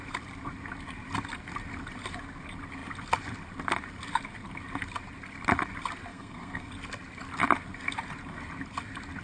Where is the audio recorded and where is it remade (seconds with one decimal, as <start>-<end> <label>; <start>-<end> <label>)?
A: 0.0-6.1 recorded; 6.1-6.7 remade; 6.7-9.2 recorded